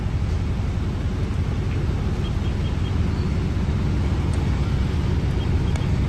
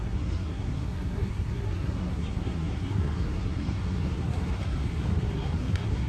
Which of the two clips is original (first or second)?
first